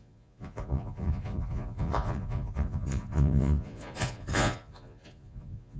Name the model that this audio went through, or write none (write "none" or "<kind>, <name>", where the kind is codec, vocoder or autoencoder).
vocoder, Vocos